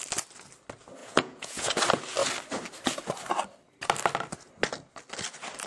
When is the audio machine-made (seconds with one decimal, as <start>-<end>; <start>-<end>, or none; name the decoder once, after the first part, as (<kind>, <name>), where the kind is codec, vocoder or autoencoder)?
1.0-1.7 (vocoder, Vocos)